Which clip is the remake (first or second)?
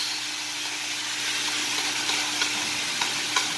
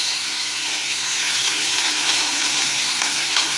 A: second